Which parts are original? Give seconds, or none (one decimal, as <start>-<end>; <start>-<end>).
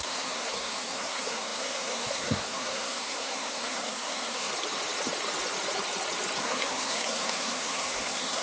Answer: 4.5-6.4